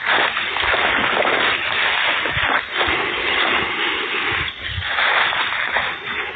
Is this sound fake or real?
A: real